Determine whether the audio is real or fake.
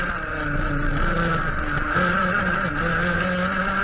real